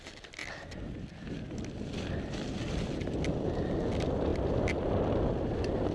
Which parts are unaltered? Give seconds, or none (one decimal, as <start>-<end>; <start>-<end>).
0.0-5.9